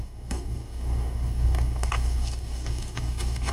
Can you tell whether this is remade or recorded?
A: remade